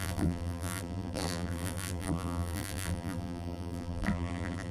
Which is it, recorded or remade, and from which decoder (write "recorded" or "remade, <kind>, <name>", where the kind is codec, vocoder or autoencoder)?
remade, vocoder, BigVGAN v2